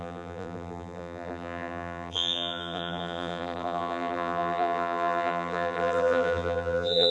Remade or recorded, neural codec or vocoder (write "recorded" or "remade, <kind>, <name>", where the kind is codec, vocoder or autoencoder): remade, vocoder, BigVGAN v2